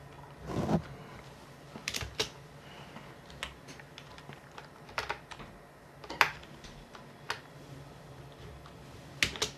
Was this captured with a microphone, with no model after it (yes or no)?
yes